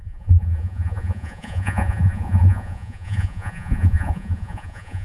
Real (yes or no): no